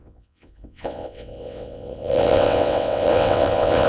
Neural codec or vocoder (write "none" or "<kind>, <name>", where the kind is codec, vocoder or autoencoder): vocoder, WaveNeXt